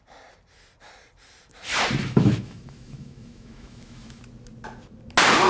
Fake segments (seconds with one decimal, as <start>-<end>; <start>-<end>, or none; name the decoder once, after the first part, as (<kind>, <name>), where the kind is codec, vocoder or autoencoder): 2.0-4.2 (autoencoder, DAC-VAE)

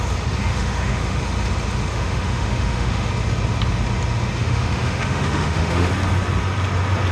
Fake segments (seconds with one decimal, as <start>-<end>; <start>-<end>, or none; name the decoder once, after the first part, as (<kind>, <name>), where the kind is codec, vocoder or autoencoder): 0.5-1.2 (autoencoder, DAC-VAE); 1.9-3.1; 4.4-5.9

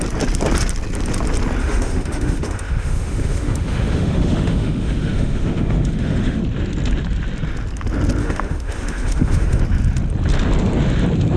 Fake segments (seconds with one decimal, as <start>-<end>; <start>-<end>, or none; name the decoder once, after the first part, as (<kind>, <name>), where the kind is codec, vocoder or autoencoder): 1.6-6.4 (autoencoder, DAC-VAE); 8.2-9.6

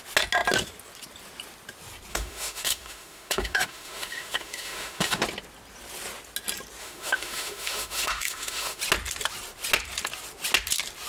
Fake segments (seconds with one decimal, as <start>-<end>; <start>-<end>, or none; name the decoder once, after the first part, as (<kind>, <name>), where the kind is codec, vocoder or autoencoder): 2.1-5.2 (autoencoder, DAC-VAE); 6.8-8.8

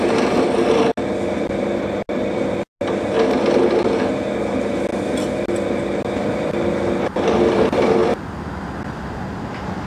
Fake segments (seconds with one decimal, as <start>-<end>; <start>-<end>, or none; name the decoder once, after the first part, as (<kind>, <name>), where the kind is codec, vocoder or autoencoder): none

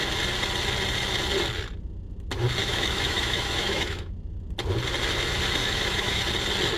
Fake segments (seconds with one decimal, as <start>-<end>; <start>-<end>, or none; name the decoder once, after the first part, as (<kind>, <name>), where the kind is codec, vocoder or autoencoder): 2.6-4.1 (autoencoder, DAC-VAE); 5.6-6.2